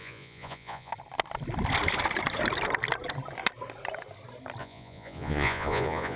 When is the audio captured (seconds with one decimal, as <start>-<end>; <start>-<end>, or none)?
0.9-4.6